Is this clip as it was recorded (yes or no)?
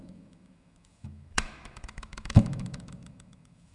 no